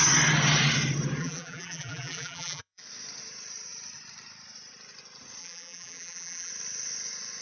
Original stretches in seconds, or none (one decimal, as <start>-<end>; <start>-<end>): 0.0-1.2; 2.8-5.4; 6.5-7.4